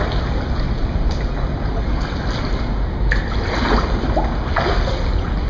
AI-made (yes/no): no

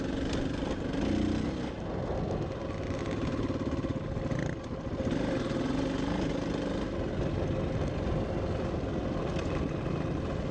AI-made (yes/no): no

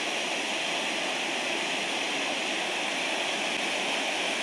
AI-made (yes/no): no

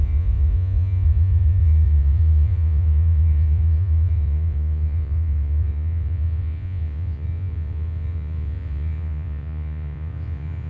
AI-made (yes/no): yes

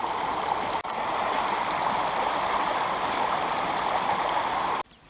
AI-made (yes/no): no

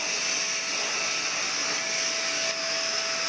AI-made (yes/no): no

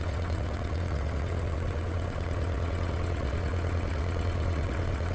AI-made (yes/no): yes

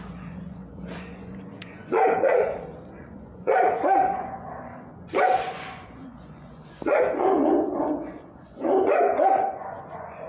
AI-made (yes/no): yes